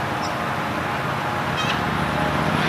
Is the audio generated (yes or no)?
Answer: no